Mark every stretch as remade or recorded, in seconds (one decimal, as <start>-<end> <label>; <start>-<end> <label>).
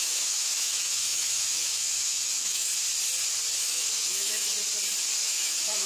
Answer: 0.0-2.7 remade; 2.7-3.6 recorded; 3.6-4.5 remade; 4.5-5.2 recorded; 5.2-5.9 remade